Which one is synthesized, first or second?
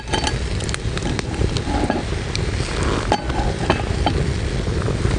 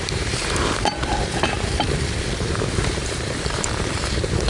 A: second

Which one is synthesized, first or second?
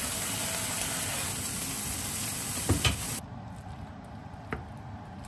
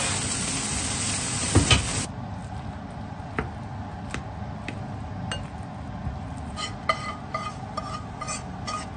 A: first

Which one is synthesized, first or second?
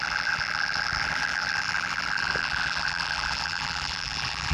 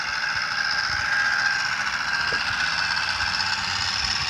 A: first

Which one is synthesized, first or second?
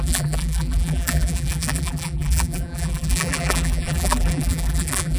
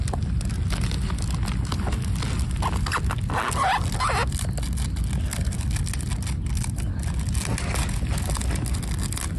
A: first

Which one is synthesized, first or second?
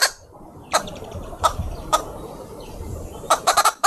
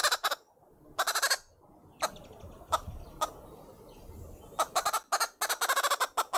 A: first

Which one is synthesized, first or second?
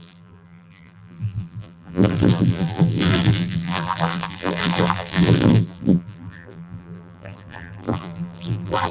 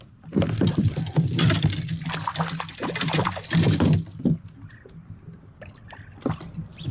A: first